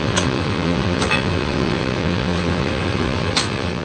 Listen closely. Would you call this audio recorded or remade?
remade